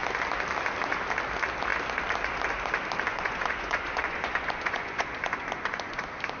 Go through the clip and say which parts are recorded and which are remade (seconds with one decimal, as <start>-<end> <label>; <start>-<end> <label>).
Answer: 0.0-3.1 recorded; 3.1-6.0 remade; 6.0-6.4 recorded